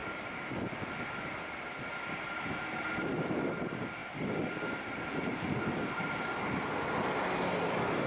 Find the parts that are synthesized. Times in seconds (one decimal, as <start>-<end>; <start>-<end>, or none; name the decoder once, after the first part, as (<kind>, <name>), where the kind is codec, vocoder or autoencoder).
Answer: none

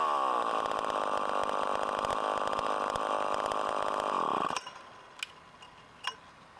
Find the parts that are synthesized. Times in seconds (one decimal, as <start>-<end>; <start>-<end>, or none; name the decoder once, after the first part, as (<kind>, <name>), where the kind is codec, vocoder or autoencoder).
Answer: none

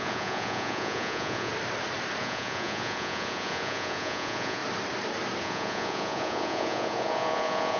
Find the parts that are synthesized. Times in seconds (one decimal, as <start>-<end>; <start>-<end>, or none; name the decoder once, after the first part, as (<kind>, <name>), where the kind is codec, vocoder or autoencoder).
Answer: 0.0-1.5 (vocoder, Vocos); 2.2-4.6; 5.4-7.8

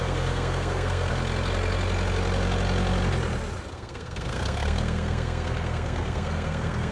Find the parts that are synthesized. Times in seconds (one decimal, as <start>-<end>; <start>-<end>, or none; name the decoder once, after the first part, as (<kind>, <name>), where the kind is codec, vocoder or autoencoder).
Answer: 0.0-1.1 (codec, SNAC); 3.7-6.9

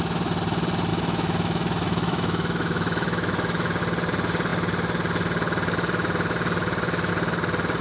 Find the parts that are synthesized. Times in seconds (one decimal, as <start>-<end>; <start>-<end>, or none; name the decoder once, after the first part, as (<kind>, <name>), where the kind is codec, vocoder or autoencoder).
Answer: 0.9-3.8 (autoencoder, DAC-VAE)

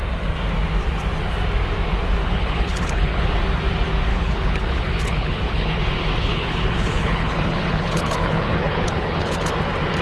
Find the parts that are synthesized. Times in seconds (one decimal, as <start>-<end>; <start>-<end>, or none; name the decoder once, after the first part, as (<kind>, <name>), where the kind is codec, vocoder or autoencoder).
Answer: 2.2-3.3 (codec, HILCodec); 4.1-5.8; 6.2-9.5